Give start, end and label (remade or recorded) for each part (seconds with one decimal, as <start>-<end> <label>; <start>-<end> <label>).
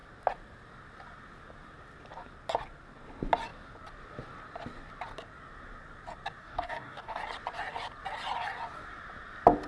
0.0-6.4 recorded; 6.4-7.2 remade; 7.2-9.7 recorded